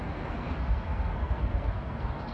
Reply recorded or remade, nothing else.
remade